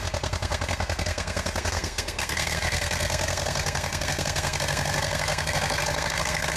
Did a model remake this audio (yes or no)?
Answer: yes